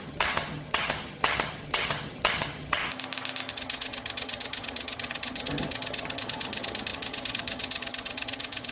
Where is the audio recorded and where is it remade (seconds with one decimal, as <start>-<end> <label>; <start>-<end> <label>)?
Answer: 0.0-2.8 remade; 2.8-3.5 recorded; 3.5-8.7 remade